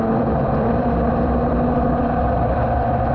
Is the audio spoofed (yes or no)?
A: yes